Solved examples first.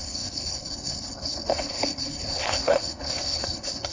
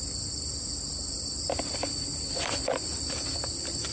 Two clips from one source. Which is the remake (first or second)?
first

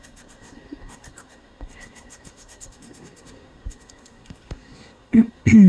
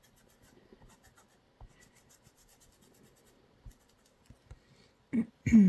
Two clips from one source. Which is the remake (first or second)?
first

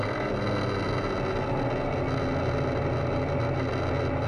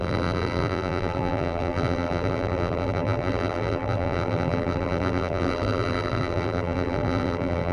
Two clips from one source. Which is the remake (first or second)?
second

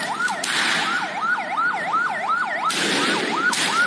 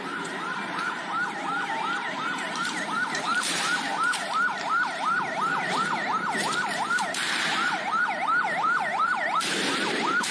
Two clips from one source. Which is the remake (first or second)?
second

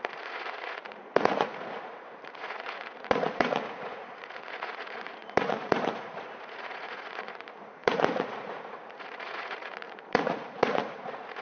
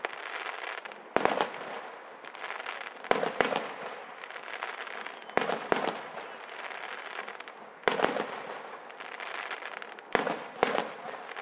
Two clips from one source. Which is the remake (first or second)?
first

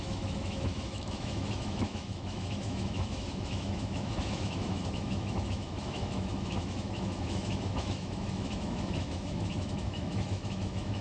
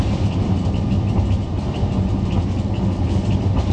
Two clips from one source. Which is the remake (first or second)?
first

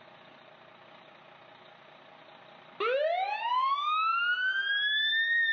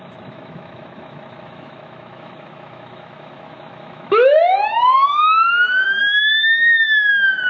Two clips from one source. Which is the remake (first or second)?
second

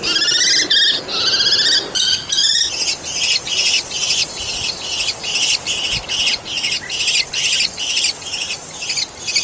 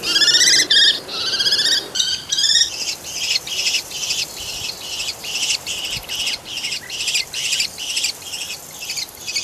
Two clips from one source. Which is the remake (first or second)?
second